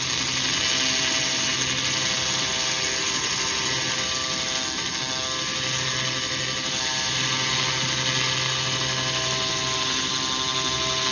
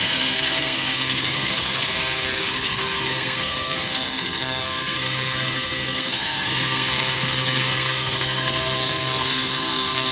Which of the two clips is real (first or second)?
first